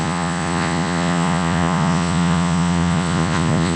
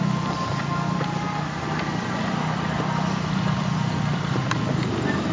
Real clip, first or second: second